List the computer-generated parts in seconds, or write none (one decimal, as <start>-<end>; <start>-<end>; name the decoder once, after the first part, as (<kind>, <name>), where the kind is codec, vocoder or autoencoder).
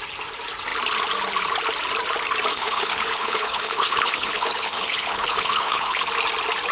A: 2.5-6.0 (codec, HILCodec)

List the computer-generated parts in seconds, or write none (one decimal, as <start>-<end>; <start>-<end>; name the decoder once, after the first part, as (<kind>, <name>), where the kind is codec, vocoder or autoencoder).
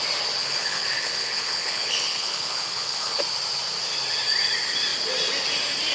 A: 0.4-3.2 (codec, HILCodec)